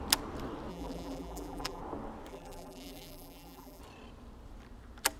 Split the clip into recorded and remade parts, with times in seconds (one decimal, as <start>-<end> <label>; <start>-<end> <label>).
0.0-0.7 recorded; 0.7-1.8 remade; 1.8-2.3 recorded; 2.3-3.8 remade; 3.8-5.2 recorded